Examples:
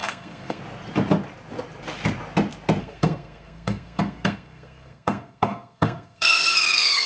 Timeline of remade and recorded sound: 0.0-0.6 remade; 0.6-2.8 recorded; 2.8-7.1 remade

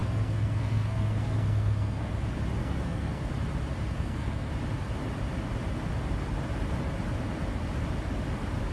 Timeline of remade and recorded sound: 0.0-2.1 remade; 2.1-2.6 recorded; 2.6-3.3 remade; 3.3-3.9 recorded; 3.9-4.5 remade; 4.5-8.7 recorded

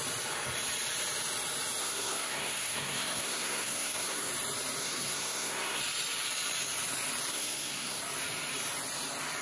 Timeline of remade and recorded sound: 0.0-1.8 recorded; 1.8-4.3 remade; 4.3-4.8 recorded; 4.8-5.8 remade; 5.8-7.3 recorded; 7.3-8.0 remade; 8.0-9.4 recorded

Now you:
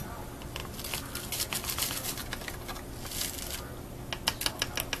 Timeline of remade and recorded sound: 0.0-5.0 recorded

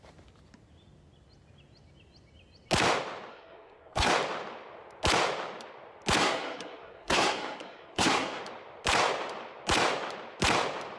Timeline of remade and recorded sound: 0.0-3.3 recorded; 3.3-4.1 remade; 4.1-6.2 recorded; 6.2-8.4 remade; 8.4-11.0 recorded